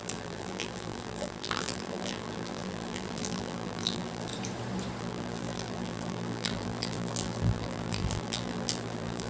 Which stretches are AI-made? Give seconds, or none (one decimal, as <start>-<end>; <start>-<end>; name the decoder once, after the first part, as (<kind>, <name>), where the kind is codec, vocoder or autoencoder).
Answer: 0.0-4.3 (vocoder, BigVGAN v2); 5.0-9.3